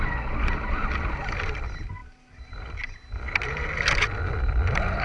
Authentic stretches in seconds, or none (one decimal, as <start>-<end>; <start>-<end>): 0.0-5.0